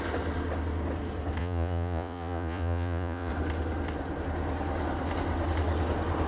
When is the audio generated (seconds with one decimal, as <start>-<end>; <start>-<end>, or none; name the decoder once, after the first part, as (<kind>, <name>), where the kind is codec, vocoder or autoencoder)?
1.4-3.3 (vocoder, Vocos)